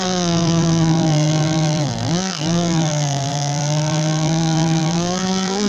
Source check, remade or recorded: remade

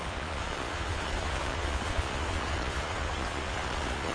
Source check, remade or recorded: remade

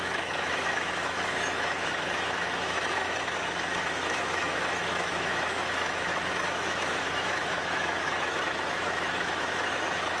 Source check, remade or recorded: remade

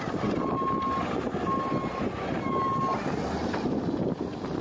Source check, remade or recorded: recorded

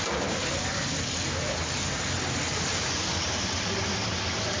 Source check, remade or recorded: recorded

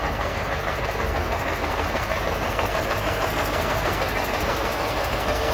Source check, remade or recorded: remade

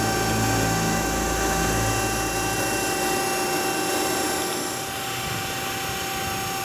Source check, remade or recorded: recorded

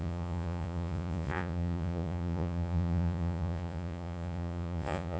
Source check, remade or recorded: remade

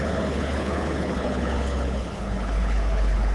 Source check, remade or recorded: remade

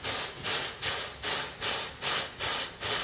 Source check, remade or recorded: recorded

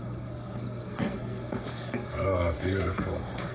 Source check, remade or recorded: remade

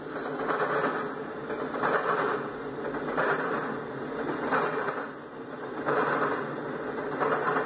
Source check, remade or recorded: recorded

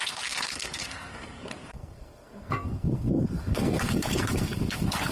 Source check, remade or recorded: remade